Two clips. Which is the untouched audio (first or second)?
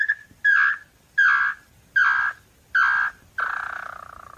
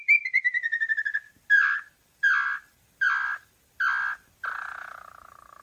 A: first